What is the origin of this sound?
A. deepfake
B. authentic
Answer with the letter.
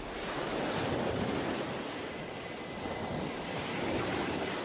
B